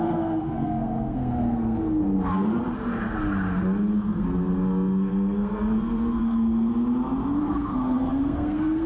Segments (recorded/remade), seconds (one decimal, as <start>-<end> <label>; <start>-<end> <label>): 0.0-2.6 remade; 2.6-4.1 recorded; 4.1-6.7 remade; 6.7-7.4 recorded; 7.4-8.9 remade